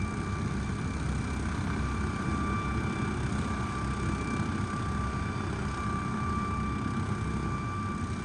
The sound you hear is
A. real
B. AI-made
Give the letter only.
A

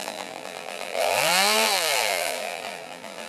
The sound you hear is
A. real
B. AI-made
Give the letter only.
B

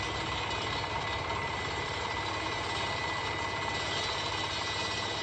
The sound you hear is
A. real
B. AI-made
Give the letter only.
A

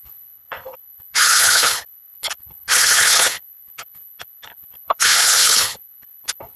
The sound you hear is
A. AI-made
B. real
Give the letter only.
A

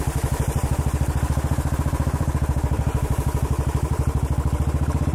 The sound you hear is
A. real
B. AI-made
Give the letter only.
B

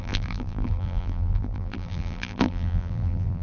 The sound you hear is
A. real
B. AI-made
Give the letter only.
B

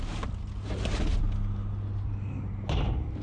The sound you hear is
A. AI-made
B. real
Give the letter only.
B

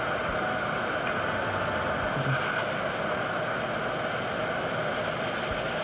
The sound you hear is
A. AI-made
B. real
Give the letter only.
B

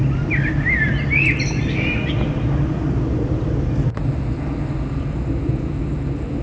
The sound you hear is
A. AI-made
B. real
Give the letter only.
B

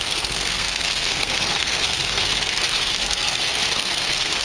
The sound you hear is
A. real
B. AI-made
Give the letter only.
B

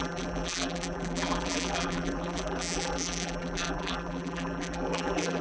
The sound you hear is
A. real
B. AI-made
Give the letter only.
B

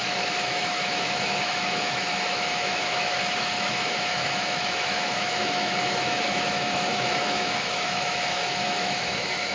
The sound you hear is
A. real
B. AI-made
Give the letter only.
B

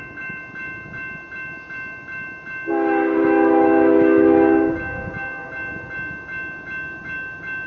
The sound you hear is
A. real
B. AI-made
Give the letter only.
A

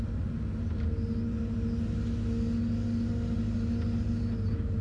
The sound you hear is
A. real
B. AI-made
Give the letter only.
A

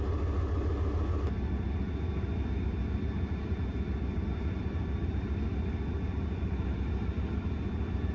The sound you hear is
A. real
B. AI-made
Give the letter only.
A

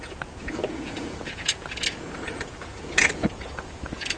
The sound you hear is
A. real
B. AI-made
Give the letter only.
B